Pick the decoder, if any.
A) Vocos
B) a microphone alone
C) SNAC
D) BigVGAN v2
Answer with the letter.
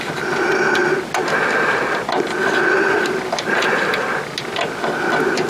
B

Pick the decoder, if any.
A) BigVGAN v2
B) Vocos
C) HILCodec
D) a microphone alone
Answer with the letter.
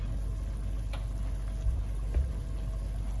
D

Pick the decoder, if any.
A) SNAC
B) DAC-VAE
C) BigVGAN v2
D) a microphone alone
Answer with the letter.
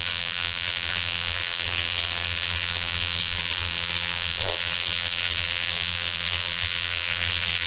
C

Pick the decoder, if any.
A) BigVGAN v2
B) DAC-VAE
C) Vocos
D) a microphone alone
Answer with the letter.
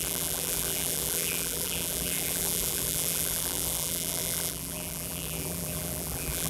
A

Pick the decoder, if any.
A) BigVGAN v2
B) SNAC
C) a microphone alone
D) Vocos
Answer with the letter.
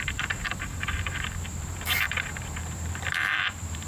A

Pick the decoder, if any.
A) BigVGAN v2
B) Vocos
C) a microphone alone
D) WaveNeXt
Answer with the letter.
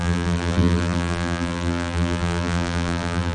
A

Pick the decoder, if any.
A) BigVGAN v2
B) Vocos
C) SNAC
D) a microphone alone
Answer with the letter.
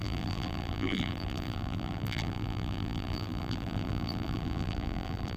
A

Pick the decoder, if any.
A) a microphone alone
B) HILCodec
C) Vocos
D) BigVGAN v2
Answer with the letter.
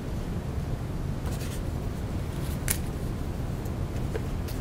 A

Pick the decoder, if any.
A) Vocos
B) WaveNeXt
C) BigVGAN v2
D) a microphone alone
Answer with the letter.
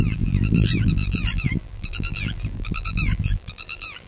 C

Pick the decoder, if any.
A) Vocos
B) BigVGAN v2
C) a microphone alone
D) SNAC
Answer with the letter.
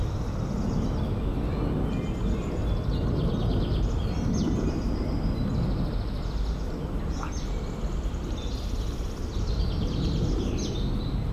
C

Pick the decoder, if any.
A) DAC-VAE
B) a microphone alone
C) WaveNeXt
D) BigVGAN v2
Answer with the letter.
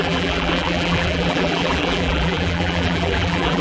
D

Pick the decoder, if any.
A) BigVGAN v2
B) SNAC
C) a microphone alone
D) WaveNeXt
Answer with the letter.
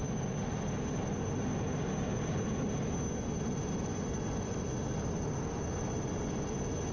C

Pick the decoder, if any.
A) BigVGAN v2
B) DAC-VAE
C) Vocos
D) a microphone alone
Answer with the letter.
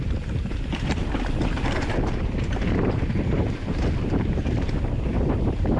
A